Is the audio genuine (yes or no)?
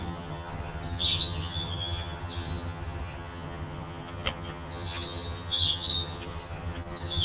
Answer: no